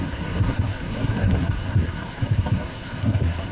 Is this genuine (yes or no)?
no